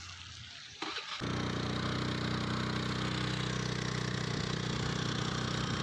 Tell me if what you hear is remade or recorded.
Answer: recorded